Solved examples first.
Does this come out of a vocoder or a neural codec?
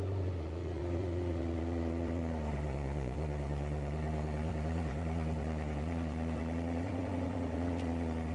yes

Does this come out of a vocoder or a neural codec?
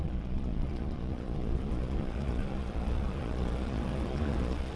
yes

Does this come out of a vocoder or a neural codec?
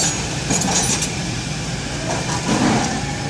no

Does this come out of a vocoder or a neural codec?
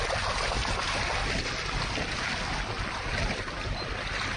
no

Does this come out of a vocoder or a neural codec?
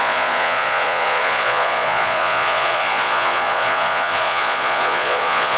yes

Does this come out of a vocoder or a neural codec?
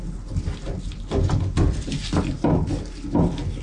no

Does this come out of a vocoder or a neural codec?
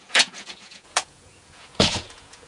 yes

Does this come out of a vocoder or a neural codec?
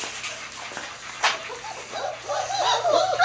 no